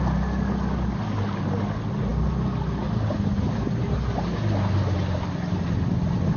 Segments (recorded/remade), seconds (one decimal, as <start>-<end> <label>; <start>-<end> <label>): 0.0-6.4 recorded